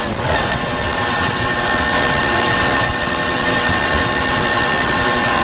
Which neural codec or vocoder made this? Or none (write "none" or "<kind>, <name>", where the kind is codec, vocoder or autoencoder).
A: vocoder, WaveNeXt